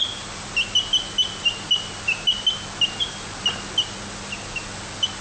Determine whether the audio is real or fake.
real